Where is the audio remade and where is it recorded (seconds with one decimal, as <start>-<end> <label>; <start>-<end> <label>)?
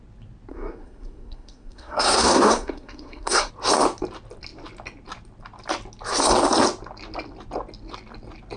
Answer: 0.0-0.5 recorded; 0.5-3.5 remade; 3.5-8.6 recorded